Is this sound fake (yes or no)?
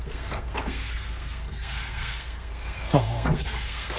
yes